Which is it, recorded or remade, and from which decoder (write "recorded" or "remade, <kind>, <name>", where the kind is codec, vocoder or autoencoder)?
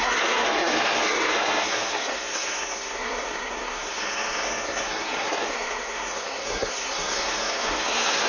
remade, codec, SNAC